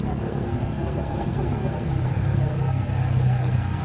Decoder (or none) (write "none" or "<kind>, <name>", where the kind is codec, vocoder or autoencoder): codec, SNAC